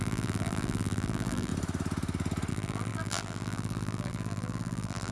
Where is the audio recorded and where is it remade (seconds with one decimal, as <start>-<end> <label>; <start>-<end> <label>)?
0.0-1.5 remade; 1.5-2.5 recorded; 2.5-5.1 remade